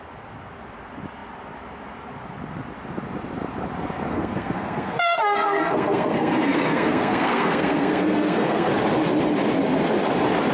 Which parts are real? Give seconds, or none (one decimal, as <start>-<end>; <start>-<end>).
0.0-4.1; 8.7-10.5